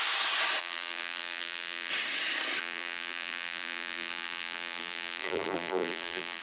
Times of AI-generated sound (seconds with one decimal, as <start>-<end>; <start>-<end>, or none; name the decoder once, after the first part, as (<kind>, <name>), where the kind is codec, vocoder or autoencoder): 0.6-1.9 (vocoder, BigVGAN v2); 2.6-6.4